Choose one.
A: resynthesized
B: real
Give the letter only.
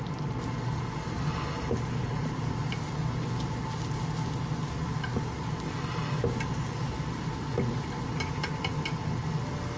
B